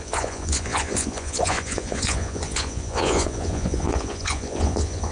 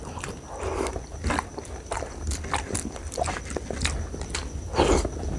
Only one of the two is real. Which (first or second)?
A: second